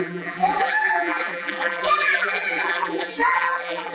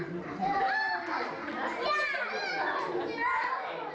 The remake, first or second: first